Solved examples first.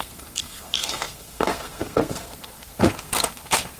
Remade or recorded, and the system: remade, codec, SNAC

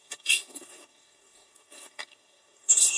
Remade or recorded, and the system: remade, codec, SNAC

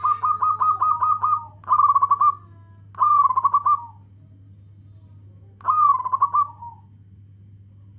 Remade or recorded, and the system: recorded